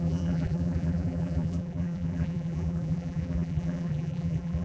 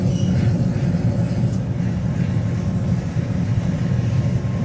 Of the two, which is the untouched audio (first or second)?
second